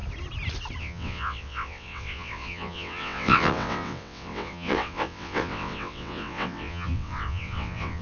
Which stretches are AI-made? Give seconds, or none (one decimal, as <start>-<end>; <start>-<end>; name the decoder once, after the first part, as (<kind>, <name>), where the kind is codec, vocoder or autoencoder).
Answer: 0.8-8.0 (vocoder, WaveNeXt)